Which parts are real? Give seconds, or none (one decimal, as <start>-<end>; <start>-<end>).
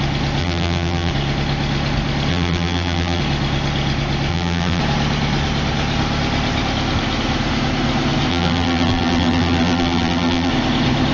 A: 0.0-0.4; 1.1-2.3; 3.2-4.3; 4.8-8.3; 10.5-11.1